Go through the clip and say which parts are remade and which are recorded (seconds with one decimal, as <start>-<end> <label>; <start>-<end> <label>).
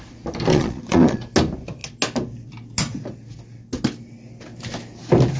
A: 0.0-0.5 recorded; 0.5-1.2 remade; 1.2-5.4 recorded